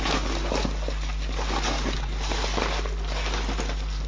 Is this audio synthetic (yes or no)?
no